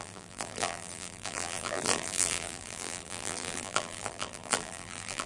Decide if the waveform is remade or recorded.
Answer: remade